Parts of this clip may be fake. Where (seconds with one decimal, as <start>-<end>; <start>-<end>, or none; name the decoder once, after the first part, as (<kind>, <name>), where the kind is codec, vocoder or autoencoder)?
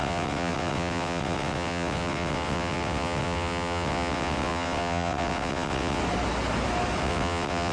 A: 0.0-6.0 (vocoder, WaveNeXt); 7.0-7.7